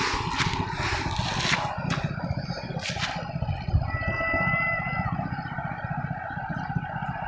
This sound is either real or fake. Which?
real